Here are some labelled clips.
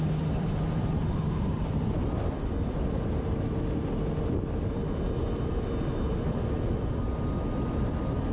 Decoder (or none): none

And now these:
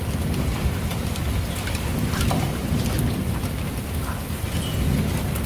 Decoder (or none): none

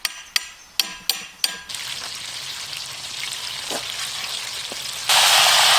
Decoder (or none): none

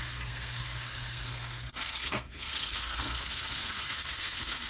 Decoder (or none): codec, SNAC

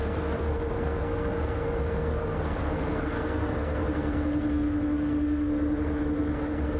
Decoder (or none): codec, SNAC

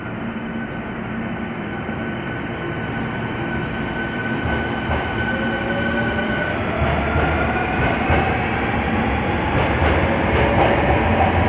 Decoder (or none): none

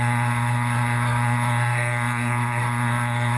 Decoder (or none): codec, SNAC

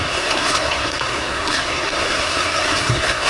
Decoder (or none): codec, SNAC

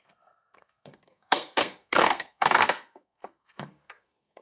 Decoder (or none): codec, SNAC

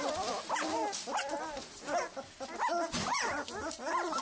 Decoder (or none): none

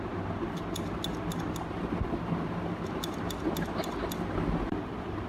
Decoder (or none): none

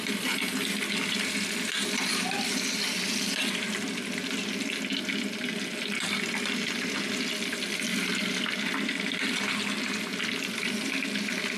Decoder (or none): none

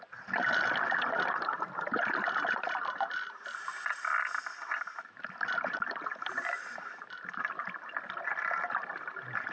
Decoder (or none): none